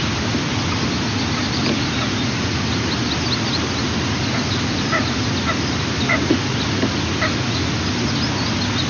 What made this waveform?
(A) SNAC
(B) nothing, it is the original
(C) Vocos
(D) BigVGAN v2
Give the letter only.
B